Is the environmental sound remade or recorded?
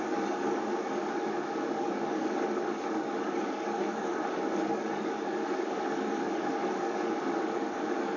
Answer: remade